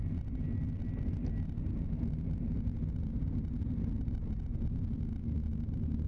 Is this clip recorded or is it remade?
recorded